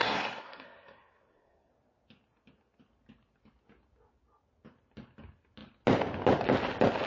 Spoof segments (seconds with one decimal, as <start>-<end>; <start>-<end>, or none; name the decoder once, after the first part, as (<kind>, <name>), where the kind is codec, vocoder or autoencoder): 0.0-1.7 (codec, SNAC)